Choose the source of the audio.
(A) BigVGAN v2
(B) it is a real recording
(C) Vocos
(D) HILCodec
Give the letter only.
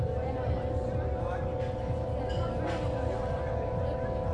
B